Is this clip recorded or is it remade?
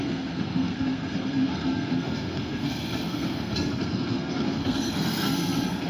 remade